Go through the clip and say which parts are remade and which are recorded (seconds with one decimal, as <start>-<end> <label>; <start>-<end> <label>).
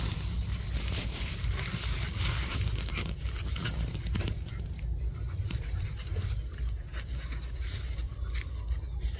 0.0-9.2 recorded